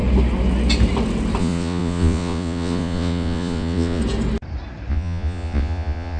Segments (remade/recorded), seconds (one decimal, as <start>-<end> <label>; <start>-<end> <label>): 0.0-1.4 recorded; 1.4-4.0 remade; 4.0-4.9 recorded; 4.9-6.2 remade

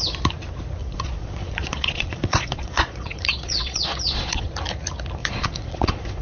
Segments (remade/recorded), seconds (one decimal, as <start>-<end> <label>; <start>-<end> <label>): 0.0-0.8 recorded; 0.8-4.5 remade; 4.5-5.2 recorded; 5.2-6.2 remade

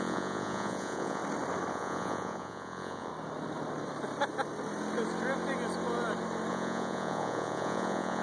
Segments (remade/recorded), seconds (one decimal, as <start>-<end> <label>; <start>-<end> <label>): 0.0-1.2 remade; 1.2-1.7 recorded; 1.7-3.1 remade; 3.1-6.5 recorded; 6.5-8.2 remade

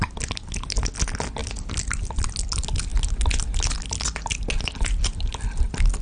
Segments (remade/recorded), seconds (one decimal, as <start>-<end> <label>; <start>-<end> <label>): 0.0-6.0 recorded

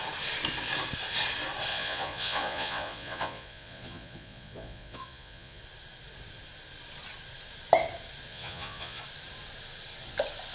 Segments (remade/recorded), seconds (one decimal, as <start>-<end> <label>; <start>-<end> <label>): 0.0-1.7 recorded; 1.7-5.6 remade; 5.6-8.3 recorded; 8.3-9.0 remade; 9.0-10.5 recorded